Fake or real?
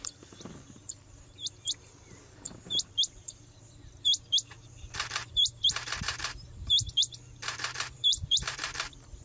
fake